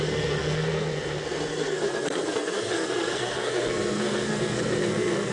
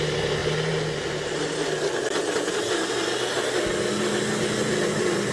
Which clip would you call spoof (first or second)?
first